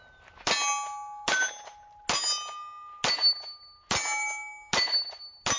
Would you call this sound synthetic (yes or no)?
no